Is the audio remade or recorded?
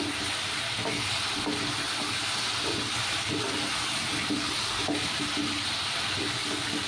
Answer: recorded